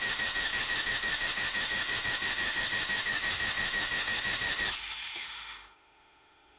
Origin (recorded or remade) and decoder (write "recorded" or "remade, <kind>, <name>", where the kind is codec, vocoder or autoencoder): remade, autoencoder, DAC-VAE